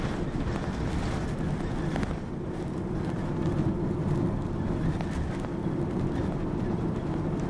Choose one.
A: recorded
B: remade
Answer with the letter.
A